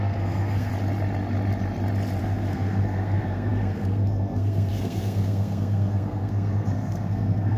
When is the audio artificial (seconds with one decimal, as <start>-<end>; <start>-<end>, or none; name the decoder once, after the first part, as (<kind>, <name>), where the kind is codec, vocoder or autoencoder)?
0.0-0.7 (codec, SNAC); 2.2-7.6